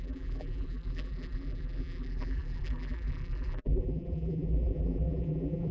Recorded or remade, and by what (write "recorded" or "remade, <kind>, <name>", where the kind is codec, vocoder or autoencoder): remade, vocoder, BigVGAN v2